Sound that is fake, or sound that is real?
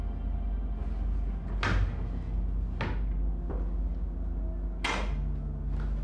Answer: real